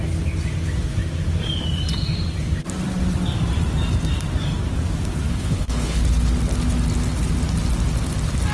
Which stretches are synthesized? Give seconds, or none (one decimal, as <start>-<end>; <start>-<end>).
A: 5.3-6.0